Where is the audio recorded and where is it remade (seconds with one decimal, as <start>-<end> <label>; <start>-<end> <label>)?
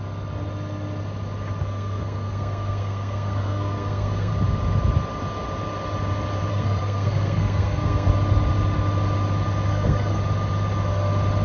0.0-1.6 recorded; 1.6-4.3 remade; 4.3-6.5 recorded; 6.5-8.1 remade; 8.1-9.7 recorded; 9.7-10.2 remade; 10.2-11.4 recorded